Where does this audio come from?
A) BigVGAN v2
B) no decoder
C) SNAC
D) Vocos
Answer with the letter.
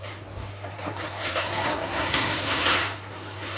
C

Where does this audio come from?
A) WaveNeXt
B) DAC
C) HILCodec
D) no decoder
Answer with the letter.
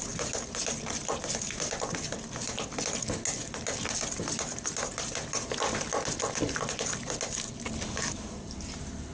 D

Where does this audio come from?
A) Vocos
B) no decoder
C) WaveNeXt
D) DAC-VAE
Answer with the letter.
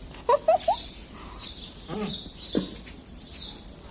B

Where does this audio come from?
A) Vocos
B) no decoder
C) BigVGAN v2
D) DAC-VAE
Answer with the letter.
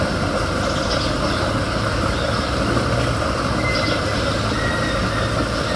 B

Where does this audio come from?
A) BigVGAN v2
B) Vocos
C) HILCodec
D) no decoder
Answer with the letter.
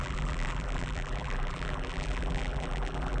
A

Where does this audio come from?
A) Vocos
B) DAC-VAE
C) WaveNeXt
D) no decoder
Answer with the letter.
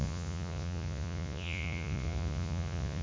A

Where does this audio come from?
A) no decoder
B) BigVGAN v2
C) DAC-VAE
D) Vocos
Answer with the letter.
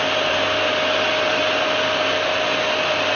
A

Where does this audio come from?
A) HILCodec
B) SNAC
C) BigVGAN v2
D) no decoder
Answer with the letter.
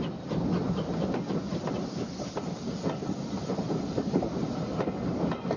D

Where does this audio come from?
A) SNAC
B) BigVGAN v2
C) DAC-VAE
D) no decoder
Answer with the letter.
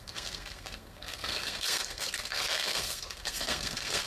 A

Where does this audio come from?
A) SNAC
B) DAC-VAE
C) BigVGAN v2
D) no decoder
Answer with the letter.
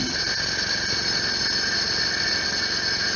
D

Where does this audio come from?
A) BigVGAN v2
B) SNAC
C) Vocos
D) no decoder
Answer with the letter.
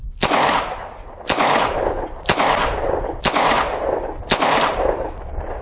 A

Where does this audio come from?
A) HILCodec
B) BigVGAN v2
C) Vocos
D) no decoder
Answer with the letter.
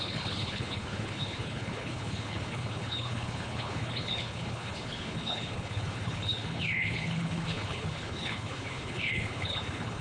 A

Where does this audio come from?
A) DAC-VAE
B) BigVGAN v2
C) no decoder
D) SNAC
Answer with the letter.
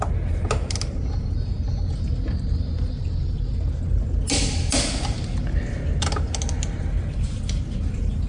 C